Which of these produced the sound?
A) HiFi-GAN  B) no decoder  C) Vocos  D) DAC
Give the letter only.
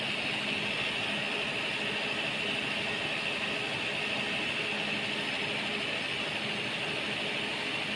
B